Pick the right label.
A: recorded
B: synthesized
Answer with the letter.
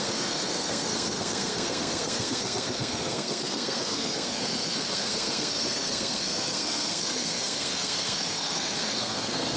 B